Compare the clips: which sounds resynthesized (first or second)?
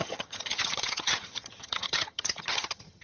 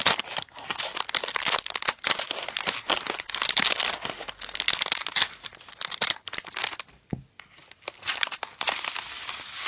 first